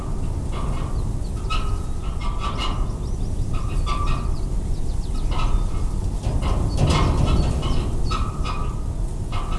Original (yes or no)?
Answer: yes